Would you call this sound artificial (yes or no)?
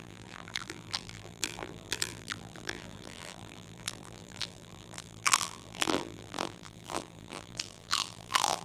yes